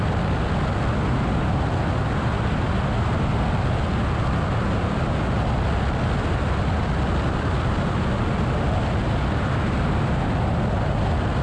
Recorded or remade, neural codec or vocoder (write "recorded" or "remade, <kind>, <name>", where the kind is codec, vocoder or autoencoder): recorded